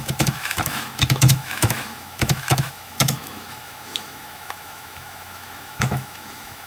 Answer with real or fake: fake